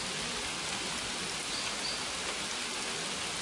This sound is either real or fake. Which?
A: real